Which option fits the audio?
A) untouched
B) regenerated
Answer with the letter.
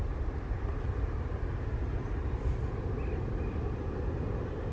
A